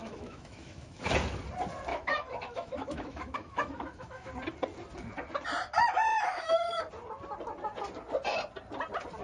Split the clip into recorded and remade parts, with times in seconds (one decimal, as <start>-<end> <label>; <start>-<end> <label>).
0.0-1.1 remade; 1.1-1.9 recorded; 1.9-4.3 remade; 4.3-6.1 recorded; 6.1-6.8 remade; 6.8-9.2 recorded